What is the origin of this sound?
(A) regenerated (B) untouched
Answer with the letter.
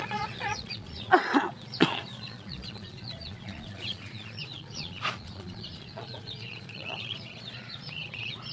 A